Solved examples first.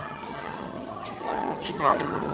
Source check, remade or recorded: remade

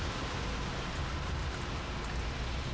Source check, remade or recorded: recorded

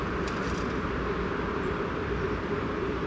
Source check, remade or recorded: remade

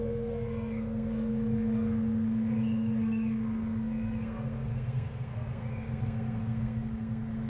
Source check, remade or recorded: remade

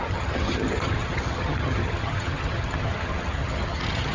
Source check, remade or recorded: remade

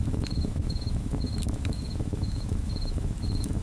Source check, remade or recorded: remade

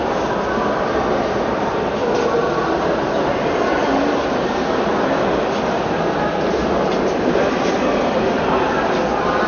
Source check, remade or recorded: remade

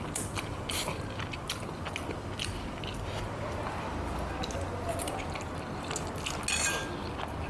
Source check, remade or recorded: recorded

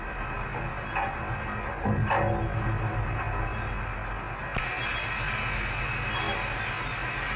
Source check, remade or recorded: recorded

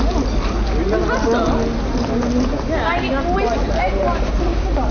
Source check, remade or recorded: recorded